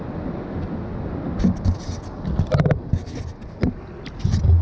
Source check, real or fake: real